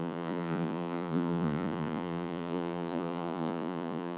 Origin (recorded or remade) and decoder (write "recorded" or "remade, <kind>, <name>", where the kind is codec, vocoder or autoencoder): remade, vocoder, Vocos